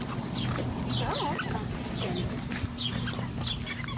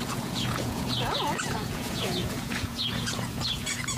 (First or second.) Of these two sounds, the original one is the first